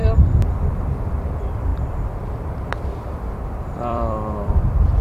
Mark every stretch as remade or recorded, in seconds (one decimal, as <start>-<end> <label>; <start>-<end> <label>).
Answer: 0.0-0.9 recorded; 0.9-1.7 remade; 1.7-2.4 recorded; 2.4-5.0 remade